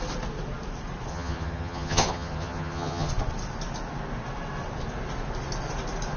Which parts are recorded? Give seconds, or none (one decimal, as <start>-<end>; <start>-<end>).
0.0-1.1; 3.1-6.2